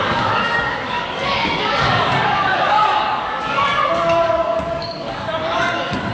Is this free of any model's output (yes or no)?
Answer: no